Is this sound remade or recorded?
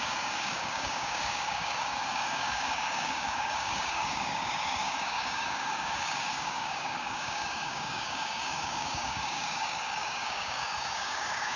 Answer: remade